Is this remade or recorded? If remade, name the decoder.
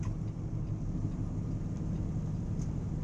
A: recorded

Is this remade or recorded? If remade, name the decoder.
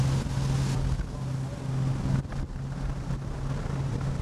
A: recorded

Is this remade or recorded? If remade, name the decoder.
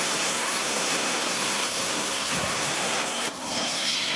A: remade, codec, SNAC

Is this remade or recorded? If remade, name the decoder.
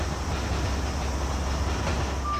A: recorded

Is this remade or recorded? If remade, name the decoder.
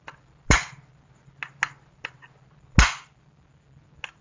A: recorded